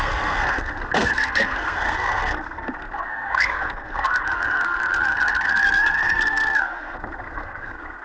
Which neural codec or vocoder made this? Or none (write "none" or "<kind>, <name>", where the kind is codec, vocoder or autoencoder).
codec, SNAC